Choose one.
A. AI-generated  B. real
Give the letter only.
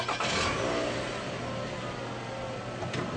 B